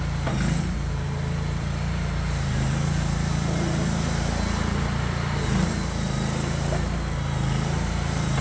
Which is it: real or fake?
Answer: fake